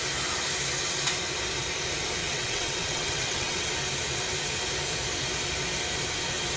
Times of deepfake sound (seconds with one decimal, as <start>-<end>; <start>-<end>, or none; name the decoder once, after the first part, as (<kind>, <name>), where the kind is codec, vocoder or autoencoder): 2.2-3.7 (vocoder, WaveNeXt)